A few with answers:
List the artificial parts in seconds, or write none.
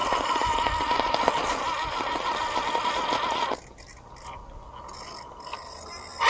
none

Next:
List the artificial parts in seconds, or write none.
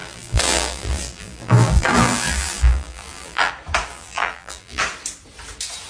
0.0-3.5 (vocoder, BigVGAN v2); 3.9-4.8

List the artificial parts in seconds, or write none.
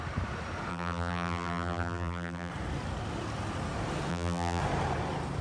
0.7-2.5 (vocoder, BigVGAN v2); 4.1-4.6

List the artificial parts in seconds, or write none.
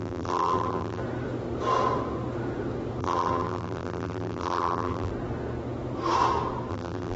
0.0-1.0 (vocoder, BigVGAN v2); 3.0-5.1; 6.7-7.2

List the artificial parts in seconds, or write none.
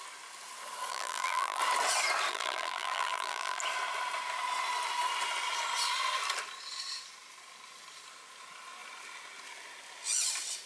0.9-1.6 (vocoder, BigVGAN v2); 2.3-3.6